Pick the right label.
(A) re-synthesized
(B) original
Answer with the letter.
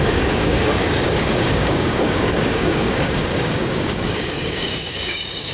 A